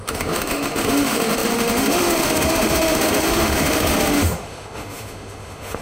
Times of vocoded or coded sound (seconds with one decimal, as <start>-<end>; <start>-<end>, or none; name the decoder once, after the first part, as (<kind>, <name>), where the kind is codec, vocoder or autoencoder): 0.0-5.8 (autoencoder, DAC-VAE)